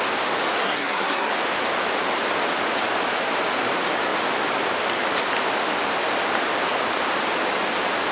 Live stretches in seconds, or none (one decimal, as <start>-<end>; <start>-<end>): 0.0-0.6; 1.3-8.1